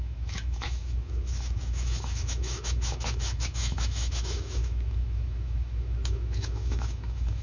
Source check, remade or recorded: remade